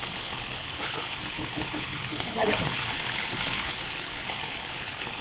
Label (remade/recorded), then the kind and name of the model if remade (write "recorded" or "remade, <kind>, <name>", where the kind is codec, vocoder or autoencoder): remade, codec, HILCodec